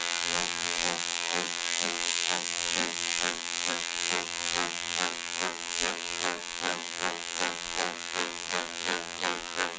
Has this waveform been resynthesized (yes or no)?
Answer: yes